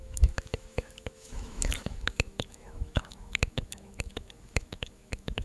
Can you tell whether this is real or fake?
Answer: fake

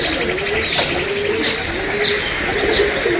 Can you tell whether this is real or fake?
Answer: real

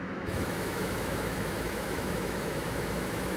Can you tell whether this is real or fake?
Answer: fake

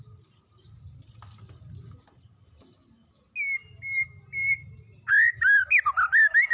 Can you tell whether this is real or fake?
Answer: real